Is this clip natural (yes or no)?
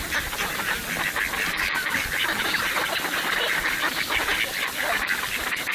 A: yes